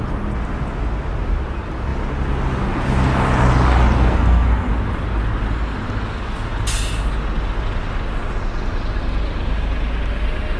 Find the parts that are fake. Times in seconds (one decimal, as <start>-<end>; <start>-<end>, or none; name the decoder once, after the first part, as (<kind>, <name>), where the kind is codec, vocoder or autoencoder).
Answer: 4.0-4.7 (codec, SNAC)